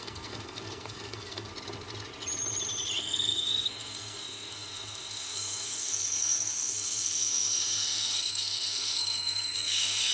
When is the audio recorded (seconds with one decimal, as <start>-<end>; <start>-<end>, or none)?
1.5-3.0